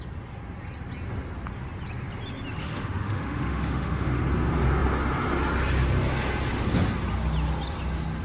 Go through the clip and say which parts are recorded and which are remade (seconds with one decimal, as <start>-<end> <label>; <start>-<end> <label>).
0.0-2.6 recorded; 2.6-4.2 remade; 4.2-8.2 recorded